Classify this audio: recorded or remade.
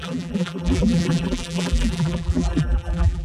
remade